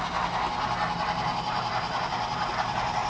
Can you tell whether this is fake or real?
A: real